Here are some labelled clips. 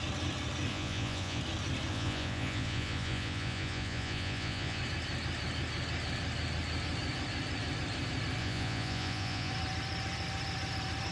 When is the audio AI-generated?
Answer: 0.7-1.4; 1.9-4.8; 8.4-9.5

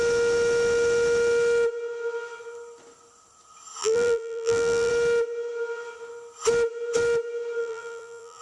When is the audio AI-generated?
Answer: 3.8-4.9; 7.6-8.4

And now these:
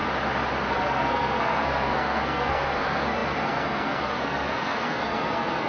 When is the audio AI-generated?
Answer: 0.7-5.7